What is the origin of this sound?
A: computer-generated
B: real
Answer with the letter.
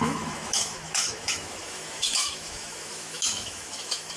A